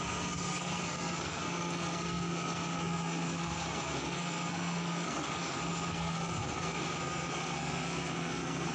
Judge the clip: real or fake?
fake